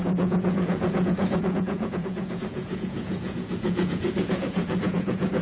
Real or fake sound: fake